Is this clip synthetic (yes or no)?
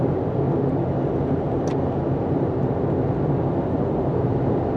no